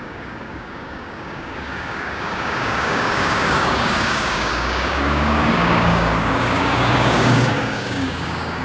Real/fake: fake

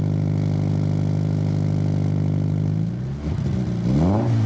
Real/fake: real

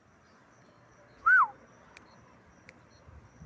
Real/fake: real